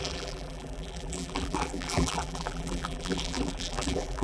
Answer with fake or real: fake